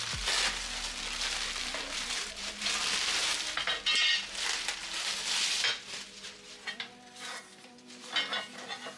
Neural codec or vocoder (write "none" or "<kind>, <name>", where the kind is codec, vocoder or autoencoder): none